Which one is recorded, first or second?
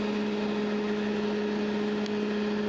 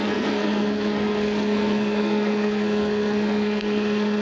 first